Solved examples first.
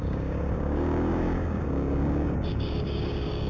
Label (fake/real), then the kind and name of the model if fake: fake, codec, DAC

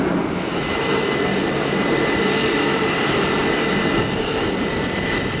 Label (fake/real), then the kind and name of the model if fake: real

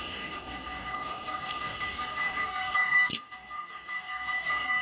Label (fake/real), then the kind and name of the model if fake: fake, codec, DAC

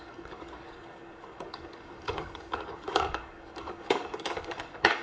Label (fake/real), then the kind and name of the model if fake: fake, codec, DAC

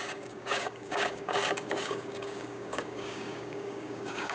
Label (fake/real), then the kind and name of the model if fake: fake, codec, DAC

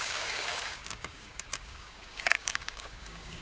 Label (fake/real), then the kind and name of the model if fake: fake, codec, DAC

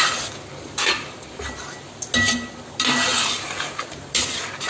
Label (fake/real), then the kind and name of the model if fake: real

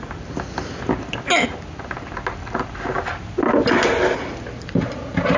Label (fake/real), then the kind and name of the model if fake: real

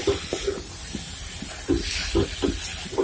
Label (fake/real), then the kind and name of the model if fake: real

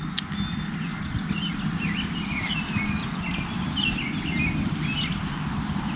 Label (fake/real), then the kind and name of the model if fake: real